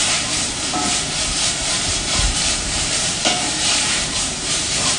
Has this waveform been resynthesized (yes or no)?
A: yes